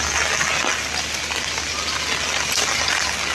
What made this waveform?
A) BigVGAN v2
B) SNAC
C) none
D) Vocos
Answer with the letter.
C